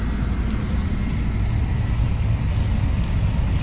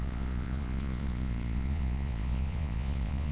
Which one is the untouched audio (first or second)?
first